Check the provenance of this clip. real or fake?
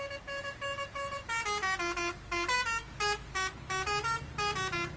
real